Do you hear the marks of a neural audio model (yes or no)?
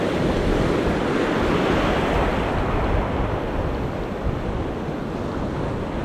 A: no